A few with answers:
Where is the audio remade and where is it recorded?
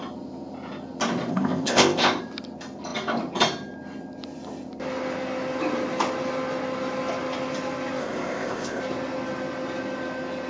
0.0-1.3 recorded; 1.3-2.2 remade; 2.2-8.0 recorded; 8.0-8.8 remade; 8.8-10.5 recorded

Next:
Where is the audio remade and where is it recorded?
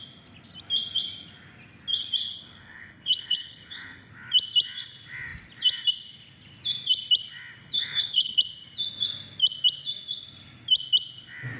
0.0-2.2 recorded; 2.2-4.1 remade; 4.1-7.6 recorded; 7.6-8.4 remade; 8.4-11.6 recorded